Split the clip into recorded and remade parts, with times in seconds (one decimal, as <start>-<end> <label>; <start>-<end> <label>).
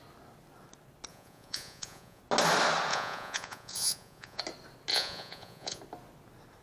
0.0-1.1 recorded; 1.1-2.2 remade; 2.2-2.9 recorded; 2.9-4.4 remade; 4.4-4.9 recorded; 4.9-5.8 remade; 5.8-6.6 recorded